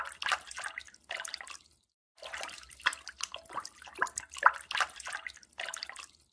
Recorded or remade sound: recorded